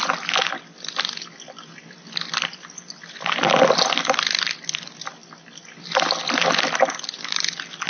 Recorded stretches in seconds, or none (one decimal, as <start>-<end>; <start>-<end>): 0.0-7.9